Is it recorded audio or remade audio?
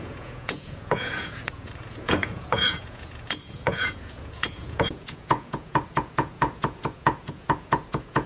remade